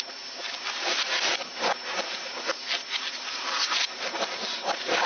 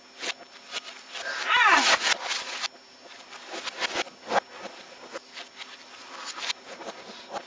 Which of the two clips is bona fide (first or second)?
second